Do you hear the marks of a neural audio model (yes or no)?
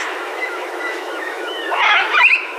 yes